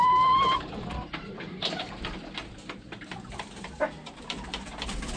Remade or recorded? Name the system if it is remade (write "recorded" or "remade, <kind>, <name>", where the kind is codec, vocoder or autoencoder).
remade, vocoder, BigVGAN v2